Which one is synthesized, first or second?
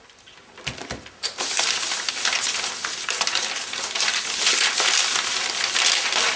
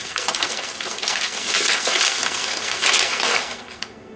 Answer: second